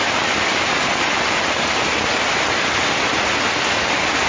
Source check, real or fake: real